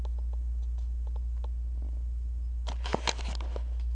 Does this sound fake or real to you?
real